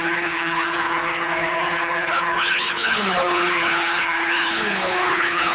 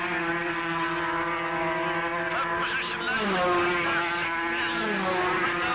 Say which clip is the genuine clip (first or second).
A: second